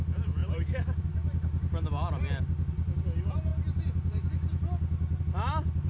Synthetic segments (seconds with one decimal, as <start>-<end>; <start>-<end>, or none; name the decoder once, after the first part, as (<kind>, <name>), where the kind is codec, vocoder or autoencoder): none